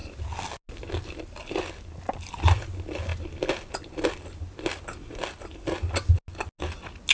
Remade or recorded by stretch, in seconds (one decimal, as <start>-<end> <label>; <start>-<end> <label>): 0.0-7.1 recorded